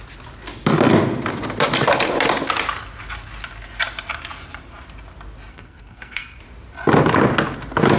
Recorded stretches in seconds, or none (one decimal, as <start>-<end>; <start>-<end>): 0.0-5.5; 6.4-8.0